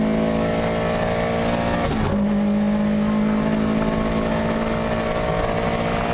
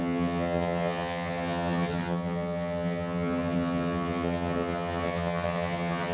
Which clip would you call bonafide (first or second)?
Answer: first